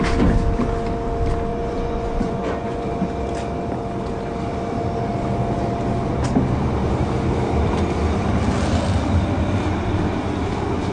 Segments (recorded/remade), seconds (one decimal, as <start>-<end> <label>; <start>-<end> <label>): 0.0-1.5 recorded; 1.5-2.9 remade; 2.9-10.9 recorded